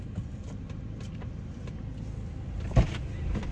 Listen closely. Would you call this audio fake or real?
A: real